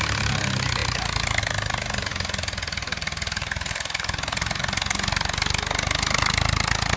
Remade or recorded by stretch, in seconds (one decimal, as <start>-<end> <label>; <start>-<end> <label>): 0.0-7.0 recorded